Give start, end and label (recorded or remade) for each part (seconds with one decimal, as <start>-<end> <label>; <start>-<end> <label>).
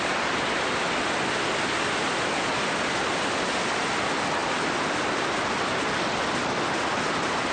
0.0-7.5 recorded